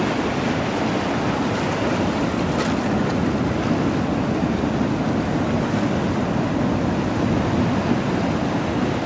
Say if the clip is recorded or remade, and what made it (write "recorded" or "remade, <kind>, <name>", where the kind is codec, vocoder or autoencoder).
recorded